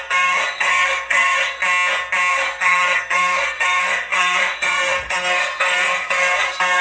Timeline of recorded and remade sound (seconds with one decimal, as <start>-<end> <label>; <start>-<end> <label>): 0.0-1.6 remade; 1.6-2.3 recorded; 2.3-6.8 remade